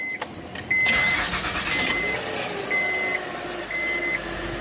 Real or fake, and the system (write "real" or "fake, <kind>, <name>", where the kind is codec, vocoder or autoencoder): real